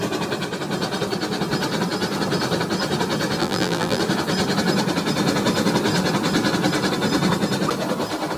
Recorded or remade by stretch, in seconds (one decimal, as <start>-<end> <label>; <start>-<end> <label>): 0.0-3.4 recorded; 3.4-4.0 remade; 4.0-8.4 recorded